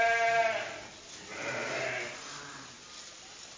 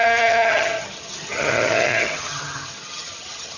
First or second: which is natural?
first